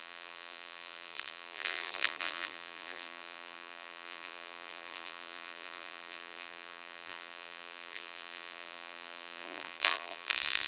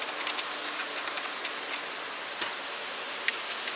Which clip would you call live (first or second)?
second